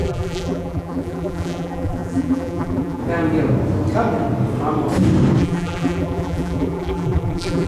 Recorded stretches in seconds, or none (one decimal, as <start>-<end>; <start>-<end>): 3.0-5.4